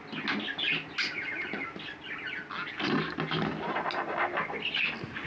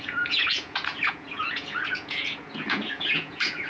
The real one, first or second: first